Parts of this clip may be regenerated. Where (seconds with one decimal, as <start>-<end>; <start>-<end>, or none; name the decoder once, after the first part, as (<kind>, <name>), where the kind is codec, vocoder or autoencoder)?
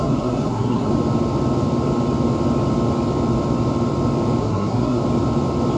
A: 0.0-0.9 (codec, SNAC); 4.4-5.0